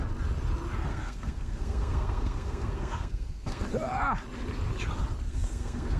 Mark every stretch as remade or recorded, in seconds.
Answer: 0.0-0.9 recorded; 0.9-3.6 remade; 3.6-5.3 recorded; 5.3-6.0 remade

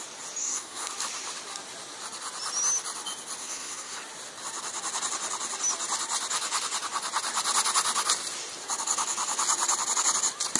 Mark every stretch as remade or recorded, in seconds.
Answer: 0.0-0.4 recorded; 0.4-0.9 remade; 0.9-3.4 recorded; 3.4-4.0 remade; 4.0-10.6 recorded

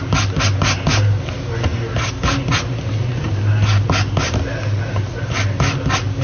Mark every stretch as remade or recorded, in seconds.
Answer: 0.0-6.2 recorded

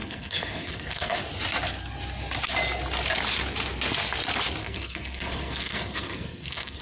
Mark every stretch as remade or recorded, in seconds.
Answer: 0.0-1.2 remade; 1.2-4.6 recorded; 4.6-6.8 remade

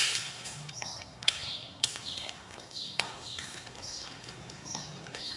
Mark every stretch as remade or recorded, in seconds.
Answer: 0.0-5.4 remade

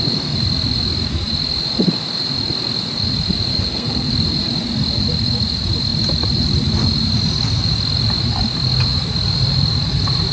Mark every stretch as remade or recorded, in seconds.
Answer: 0.0-3.5 recorded; 3.5-4.1 remade; 4.1-10.3 recorded

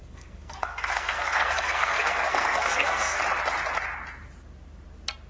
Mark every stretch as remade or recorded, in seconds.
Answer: 0.0-3.2 remade; 3.2-5.3 recorded

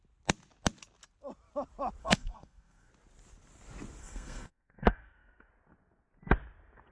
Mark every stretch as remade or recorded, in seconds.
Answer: 0.0-2.0 recorded; 2.0-2.9 remade; 2.9-4.0 recorded; 4.0-5.5 remade; 5.5-6.9 recorded